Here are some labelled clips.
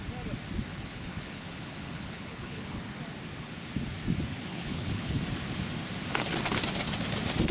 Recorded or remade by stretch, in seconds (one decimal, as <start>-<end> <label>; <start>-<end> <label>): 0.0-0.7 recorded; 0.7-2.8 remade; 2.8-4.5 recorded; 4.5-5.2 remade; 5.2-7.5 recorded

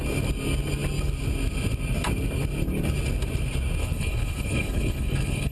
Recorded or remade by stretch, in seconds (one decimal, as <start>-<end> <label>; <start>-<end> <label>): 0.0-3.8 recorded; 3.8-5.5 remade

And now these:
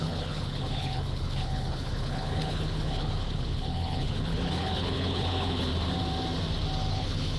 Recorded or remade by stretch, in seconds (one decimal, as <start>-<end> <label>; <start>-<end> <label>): 0.0-5.7 remade; 5.7-6.9 recorded; 6.9-7.4 remade